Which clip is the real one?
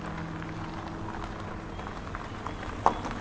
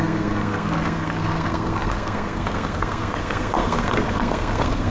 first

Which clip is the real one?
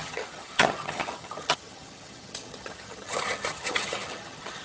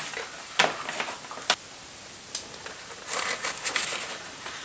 second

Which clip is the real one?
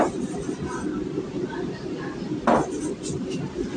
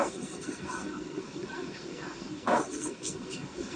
first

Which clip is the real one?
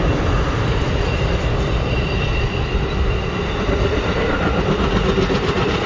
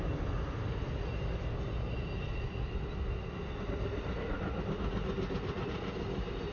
second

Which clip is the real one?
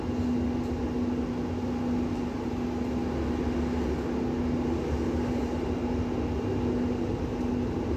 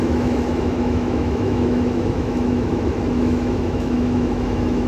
first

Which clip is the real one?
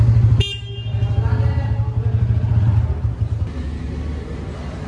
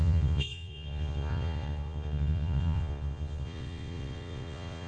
first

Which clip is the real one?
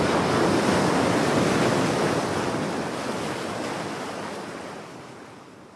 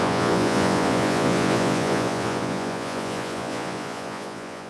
first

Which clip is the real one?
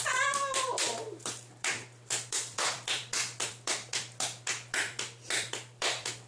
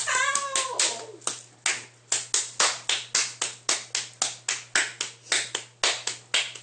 second